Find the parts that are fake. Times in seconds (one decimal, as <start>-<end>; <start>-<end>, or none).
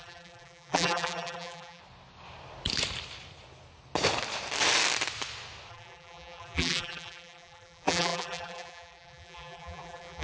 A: 0.0-1.8; 5.7-10.2